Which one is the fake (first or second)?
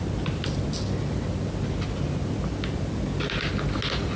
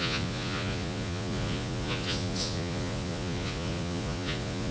second